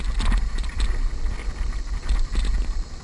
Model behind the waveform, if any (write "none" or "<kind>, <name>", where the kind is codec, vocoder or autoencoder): none